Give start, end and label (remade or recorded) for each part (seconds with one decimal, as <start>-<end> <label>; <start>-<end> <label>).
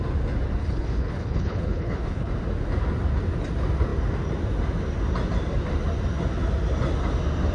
0.0-0.6 recorded; 0.6-2.3 remade; 2.3-7.5 recorded